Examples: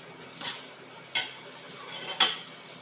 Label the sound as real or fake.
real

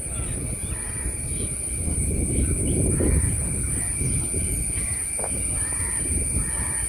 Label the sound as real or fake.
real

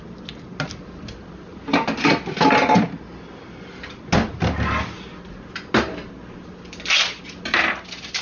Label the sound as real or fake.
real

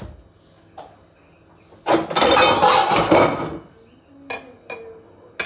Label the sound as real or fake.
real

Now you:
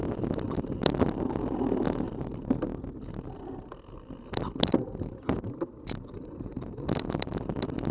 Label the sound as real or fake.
real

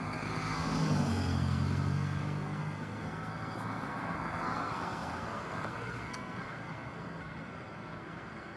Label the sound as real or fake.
fake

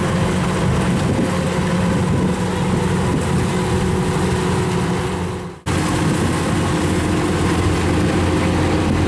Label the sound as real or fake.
real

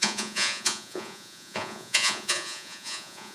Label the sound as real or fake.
fake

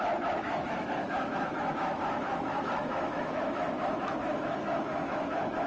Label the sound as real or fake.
fake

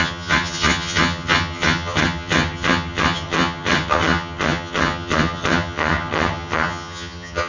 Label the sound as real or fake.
fake